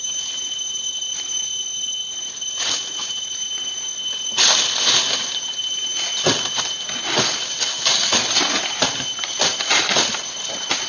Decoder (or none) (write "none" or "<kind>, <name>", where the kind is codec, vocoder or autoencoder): none